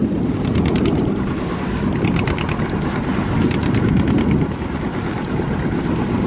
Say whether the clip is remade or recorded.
recorded